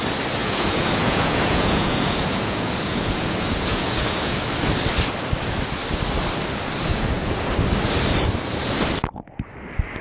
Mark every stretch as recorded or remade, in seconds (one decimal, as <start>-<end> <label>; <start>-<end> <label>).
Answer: 0.0-0.4 recorded; 0.4-4.4 remade; 4.4-6.9 recorded; 6.9-7.5 remade; 7.5-10.0 recorded